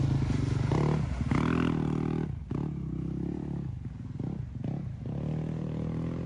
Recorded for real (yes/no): yes